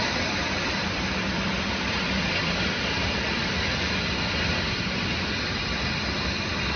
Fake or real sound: fake